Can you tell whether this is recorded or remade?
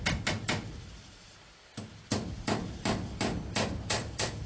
recorded